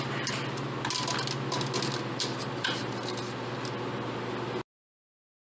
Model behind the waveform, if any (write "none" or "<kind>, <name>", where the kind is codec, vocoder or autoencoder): none